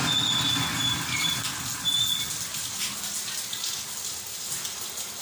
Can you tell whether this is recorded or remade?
recorded